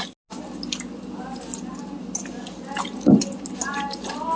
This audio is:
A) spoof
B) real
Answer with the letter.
B